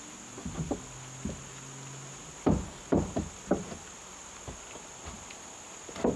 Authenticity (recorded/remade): recorded